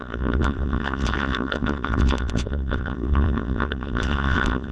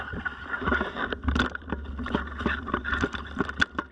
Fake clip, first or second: first